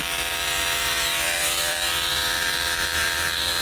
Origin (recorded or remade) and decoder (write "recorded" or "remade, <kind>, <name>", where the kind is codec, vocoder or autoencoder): remade, vocoder, BigVGAN v2